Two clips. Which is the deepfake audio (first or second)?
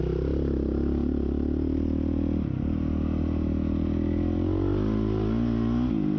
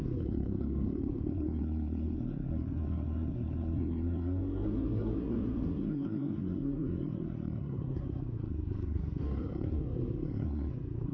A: second